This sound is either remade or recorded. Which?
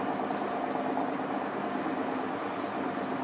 recorded